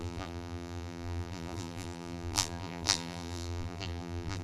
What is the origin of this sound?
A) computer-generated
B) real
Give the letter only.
A